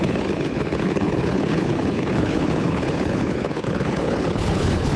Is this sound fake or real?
fake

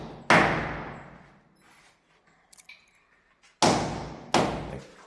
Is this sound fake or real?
real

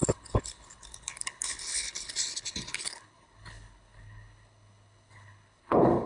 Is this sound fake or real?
fake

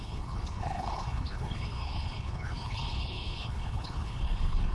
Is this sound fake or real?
fake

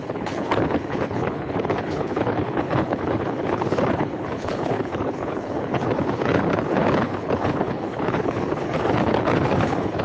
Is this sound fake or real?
fake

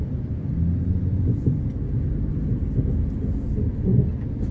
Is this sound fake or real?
real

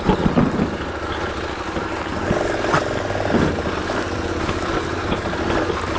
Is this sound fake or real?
real